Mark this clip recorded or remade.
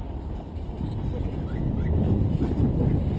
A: recorded